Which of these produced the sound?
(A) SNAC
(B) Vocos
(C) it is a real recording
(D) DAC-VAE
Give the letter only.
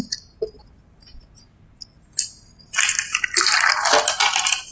C